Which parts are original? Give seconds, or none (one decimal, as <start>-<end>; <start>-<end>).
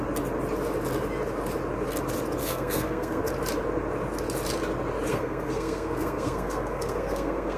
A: 0.0-2.4; 3.2-5.1